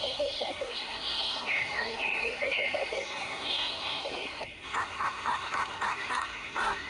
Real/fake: fake